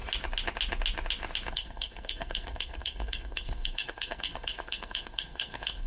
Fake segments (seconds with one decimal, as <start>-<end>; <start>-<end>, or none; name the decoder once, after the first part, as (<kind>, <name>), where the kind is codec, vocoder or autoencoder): 1.5-5.9 (codec, SNAC)